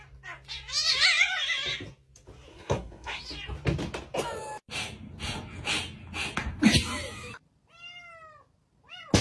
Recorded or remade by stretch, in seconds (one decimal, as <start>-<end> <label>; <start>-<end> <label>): 0.0-2.5 recorded; 2.5-3.2 remade; 3.2-9.2 recorded